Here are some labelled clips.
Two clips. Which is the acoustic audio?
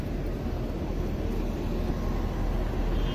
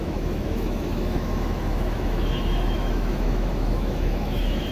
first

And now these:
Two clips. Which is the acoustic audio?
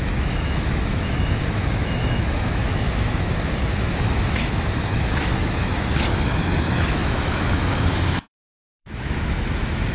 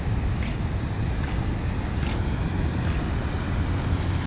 second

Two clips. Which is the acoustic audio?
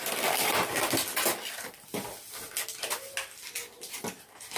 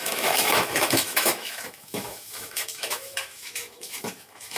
first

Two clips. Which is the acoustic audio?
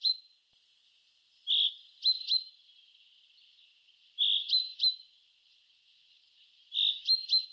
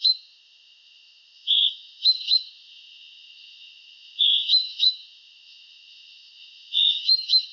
first